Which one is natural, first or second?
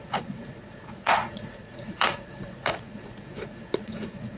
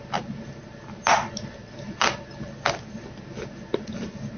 second